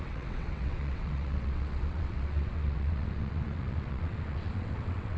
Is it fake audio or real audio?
fake